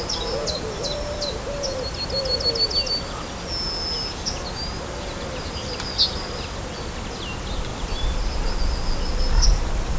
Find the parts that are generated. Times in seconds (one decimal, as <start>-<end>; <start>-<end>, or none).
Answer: none